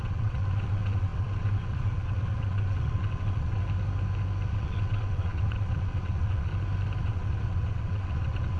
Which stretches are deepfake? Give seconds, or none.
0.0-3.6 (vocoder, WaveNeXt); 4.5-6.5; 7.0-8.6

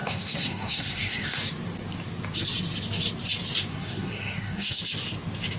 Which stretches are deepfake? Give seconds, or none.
0.0-1.4 (codec, SNAC); 3.7-4.8

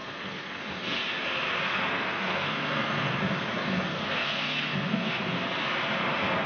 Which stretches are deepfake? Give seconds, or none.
0.0-0.6 (codec, SNAC); 1.7-3.2; 3.9-5.3